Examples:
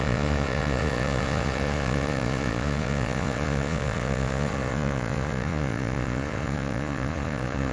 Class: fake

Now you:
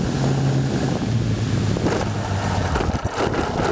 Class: real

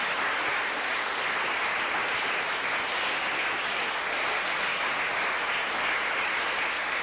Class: real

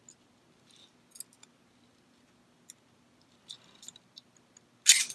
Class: real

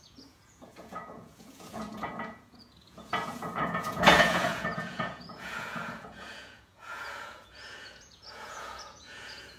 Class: fake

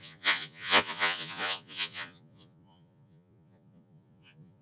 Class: fake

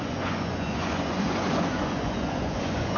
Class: fake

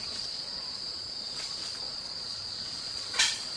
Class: fake